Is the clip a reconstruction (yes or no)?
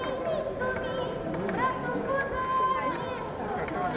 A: no